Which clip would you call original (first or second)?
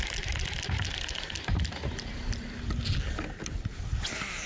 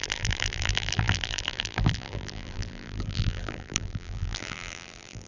first